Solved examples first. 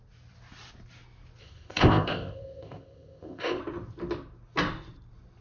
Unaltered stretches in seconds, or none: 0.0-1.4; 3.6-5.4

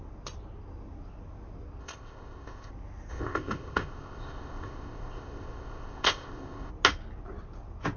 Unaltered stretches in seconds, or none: 0.0-1.8; 2.7-3.1; 6.7-8.0

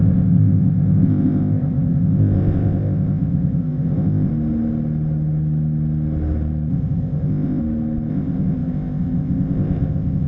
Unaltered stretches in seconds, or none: 4.3-6.7; 7.6-8.1

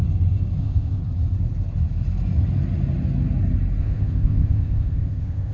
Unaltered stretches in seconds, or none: 0.0-0.6; 1.0-3.8

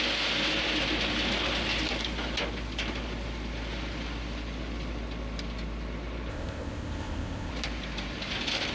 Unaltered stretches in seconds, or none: 0.0-6.3; 7.5-8.7

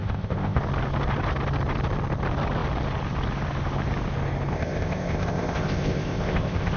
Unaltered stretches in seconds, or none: 0.6-4.5